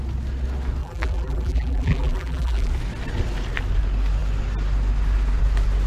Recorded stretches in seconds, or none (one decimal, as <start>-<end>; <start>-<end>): 0.0-0.8; 2.7-5.9